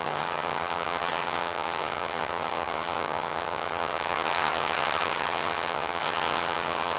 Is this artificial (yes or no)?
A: yes